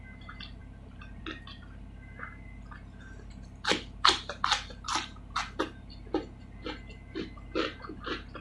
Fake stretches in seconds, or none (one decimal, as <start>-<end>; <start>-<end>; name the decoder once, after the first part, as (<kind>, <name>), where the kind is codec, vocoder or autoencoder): none